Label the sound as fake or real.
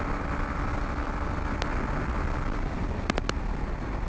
real